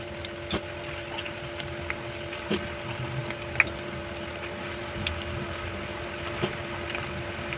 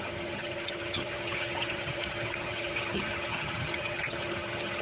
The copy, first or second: second